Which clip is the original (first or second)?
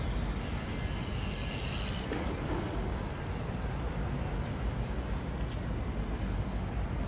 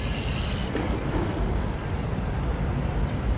first